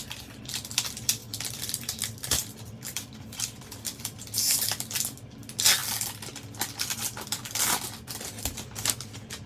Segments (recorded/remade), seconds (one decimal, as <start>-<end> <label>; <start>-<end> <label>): 0.0-1.2 recorded; 1.2-4.2 remade; 4.2-9.5 recorded